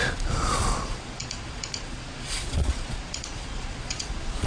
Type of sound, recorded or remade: remade